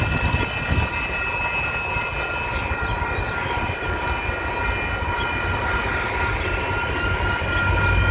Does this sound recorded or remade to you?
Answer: recorded